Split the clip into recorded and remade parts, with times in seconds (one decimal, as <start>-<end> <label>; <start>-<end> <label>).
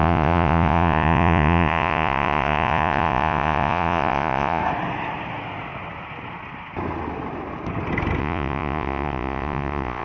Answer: 0.0-4.6 remade; 4.6-8.2 recorded; 8.2-10.0 remade